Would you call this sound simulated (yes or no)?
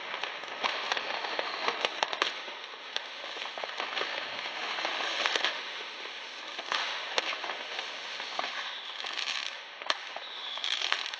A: yes